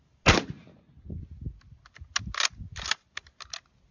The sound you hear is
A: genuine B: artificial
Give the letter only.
A